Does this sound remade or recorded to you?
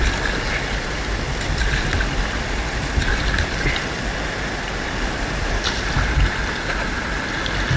recorded